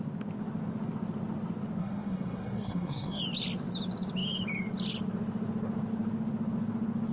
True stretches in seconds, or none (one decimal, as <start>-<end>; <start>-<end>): 0.0-1.8; 3.2-7.1